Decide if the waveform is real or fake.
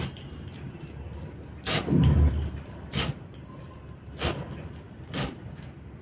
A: real